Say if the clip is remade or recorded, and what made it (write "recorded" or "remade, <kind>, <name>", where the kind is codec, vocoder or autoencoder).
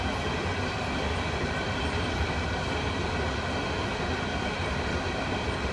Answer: recorded